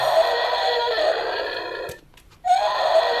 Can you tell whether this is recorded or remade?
recorded